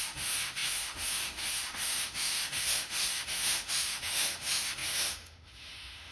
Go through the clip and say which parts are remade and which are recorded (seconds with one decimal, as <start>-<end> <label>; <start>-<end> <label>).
0.0-6.1 remade